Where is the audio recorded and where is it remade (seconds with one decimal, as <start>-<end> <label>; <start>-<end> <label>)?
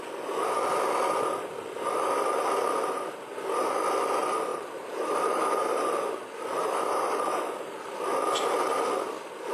0.0-4.5 recorded; 4.5-5.8 remade; 5.8-6.6 recorded; 6.6-7.8 remade; 7.8-9.5 recorded